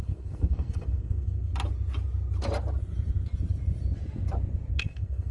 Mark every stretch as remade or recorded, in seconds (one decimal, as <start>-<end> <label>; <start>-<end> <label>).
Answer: 0.0-1.5 remade; 1.5-4.7 recorded; 4.7-5.3 remade